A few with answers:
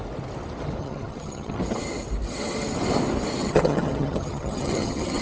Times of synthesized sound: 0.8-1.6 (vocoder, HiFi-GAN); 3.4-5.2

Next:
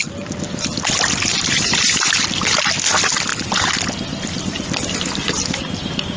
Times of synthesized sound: none

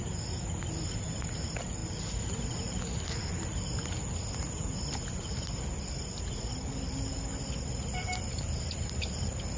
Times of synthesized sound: none

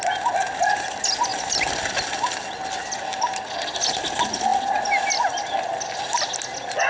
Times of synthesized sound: none

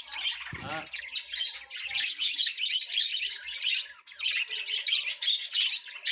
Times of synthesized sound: none

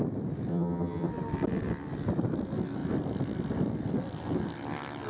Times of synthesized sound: 0.5-1.1 (vocoder, HiFi-GAN)